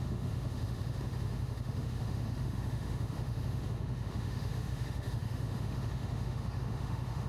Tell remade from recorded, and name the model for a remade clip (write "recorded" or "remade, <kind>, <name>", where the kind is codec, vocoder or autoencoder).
remade, autoencoder, DAC-VAE